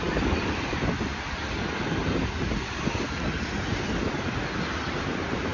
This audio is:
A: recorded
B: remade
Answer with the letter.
A